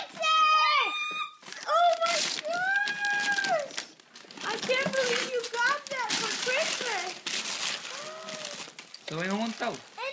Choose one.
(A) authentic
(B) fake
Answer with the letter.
A